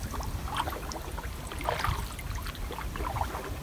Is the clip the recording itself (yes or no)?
yes